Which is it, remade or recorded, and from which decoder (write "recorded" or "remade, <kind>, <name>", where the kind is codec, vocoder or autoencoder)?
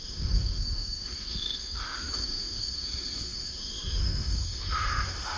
remade, autoencoder, DAC-VAE